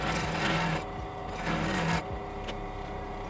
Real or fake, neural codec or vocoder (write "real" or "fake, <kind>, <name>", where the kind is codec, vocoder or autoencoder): real